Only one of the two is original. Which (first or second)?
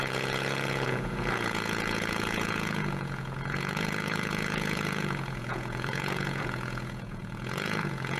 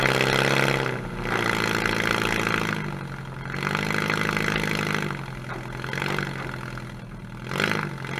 second